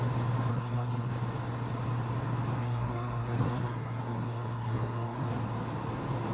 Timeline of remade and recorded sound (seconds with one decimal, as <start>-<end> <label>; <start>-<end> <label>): 0.0-0.5 recorded; 0.5-1.1 remade; 1.1-2.6 recorded; 2.6-5.3 remade; 5.3-6.3 recorded